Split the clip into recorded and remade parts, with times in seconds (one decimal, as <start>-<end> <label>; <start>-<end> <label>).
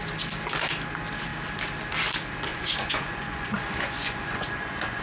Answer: 0.0-2.5 recorded; 2.5-5.0 remade